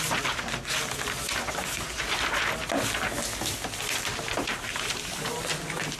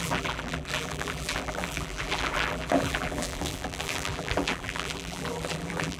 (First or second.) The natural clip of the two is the first